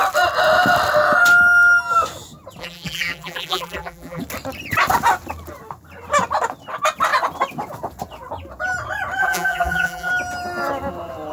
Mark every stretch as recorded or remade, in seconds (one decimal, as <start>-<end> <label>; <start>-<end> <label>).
0.0-2.6 recorded; 2.6-4.2 remade; 4.2-9.2 recorded; 9.2-10.1 remade; 10.1-11.3 recorded